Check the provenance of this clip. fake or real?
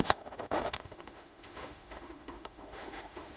fake